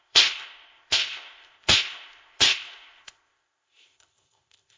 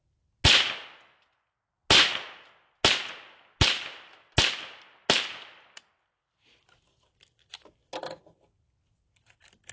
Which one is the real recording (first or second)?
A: second